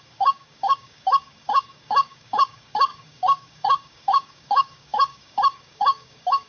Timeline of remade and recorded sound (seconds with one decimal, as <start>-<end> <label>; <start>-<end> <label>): 0.0-6.5 remade